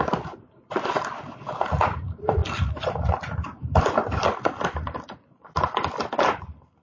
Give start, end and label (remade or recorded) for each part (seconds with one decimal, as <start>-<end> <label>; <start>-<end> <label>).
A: 0.0-6.8 recorded